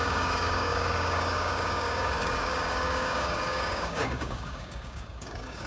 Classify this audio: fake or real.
fake